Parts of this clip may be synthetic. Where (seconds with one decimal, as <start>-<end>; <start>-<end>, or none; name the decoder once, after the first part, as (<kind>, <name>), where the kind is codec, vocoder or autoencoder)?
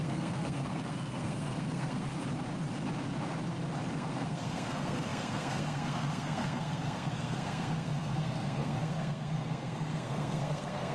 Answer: 0.0-2.1 (codec, SNAC); 3.9-10.9